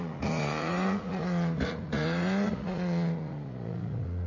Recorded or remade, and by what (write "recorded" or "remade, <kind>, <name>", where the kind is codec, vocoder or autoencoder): remade, vocoder, Vocos